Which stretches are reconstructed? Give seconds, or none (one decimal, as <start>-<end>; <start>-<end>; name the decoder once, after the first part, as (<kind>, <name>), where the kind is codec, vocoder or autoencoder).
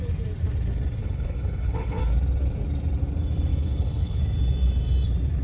1.0-2.0 (codec, HILCodec); 3.5-4.2